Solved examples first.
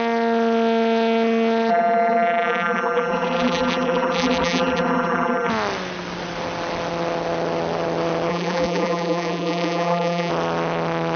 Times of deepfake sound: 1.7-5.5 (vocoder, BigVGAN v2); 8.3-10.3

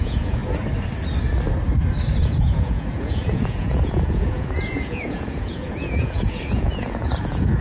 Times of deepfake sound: 0.0-0.4 (vocoder, Vocos); 2.2-7.6